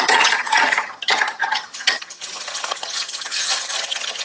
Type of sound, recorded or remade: remade